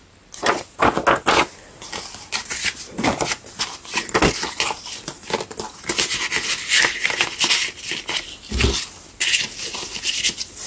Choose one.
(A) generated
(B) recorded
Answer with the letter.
B